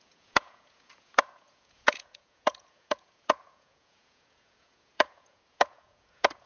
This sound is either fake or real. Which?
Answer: fake